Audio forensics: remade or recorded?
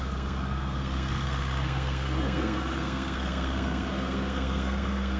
remade